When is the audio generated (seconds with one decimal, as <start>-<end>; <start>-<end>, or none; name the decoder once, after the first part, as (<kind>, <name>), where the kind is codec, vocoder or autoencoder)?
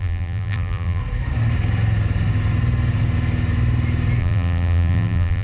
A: 0.0-1.0 (vocoder, BigVGAN v2); 4.2-5.4